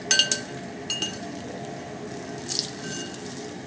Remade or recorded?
recorded